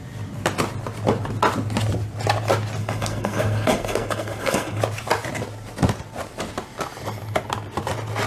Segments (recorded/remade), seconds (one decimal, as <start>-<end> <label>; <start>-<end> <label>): 0.0-2.8 recorded; 2.8-4.8 remade; 4.8-8.3 recorded